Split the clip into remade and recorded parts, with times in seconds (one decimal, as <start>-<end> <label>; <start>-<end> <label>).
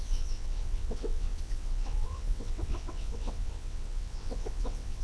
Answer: 0.0-5.0 remade